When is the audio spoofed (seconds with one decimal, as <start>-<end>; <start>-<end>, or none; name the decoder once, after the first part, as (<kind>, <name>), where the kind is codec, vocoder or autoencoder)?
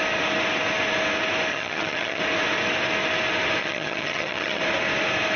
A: 1.5-2.2 (vocoder, HiFi-GAN); 3.6-4.6